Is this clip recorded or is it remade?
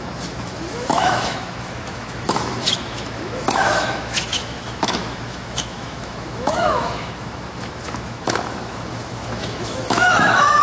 remade